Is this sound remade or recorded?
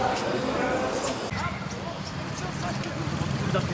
recorded